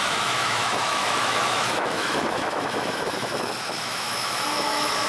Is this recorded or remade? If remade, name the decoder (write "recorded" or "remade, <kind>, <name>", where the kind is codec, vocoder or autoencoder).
remade, autoencoder, DAC-VAE